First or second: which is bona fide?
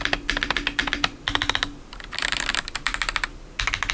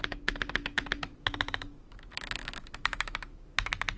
first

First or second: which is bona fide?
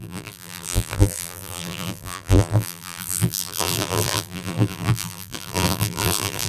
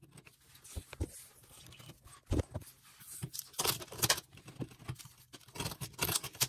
second